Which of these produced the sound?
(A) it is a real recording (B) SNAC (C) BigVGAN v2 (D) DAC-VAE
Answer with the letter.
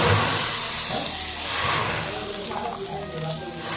A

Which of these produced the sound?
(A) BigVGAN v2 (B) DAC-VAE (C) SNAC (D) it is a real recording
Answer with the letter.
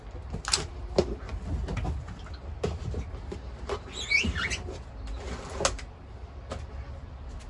D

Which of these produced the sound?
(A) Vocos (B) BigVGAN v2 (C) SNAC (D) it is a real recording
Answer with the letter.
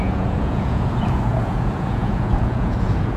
A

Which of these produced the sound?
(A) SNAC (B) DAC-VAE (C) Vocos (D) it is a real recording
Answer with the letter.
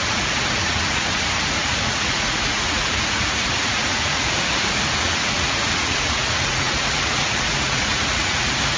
C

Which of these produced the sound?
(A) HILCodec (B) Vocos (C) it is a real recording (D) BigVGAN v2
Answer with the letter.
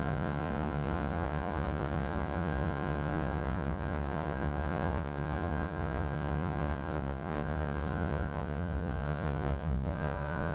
B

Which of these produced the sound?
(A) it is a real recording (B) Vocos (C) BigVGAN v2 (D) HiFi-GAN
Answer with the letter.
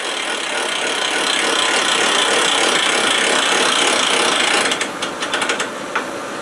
A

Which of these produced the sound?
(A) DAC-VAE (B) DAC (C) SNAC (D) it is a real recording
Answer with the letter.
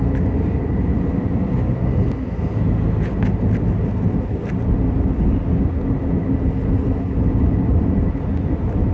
D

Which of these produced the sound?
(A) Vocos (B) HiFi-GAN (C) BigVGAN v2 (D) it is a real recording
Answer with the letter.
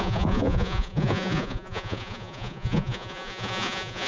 A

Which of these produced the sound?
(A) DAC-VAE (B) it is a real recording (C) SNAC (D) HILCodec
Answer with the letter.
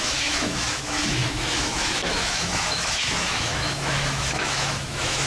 A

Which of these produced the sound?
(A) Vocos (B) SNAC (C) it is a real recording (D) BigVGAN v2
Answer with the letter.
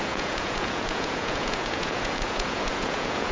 A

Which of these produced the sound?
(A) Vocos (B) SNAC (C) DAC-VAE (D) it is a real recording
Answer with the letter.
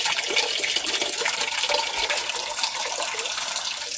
D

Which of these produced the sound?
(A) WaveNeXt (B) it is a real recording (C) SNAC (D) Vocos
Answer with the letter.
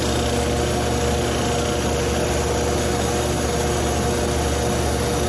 B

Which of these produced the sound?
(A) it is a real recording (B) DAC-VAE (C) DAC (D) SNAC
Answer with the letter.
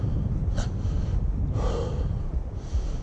A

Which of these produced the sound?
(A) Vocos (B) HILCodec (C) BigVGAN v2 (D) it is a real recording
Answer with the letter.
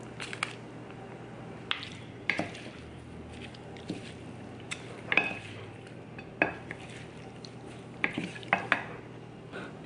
D